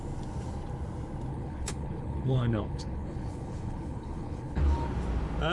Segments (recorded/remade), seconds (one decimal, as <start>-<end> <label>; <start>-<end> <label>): 0.0-1.3 recorded; 1.3-4.6 remade; 4.6-5.5 recorded